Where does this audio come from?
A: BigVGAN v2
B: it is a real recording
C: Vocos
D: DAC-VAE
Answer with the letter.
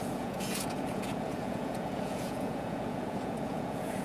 C